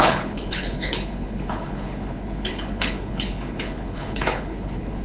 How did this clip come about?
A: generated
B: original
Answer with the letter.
A